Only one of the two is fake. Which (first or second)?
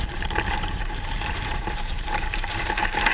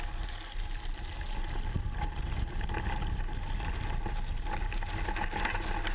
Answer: first